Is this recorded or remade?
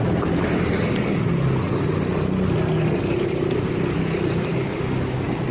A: recorded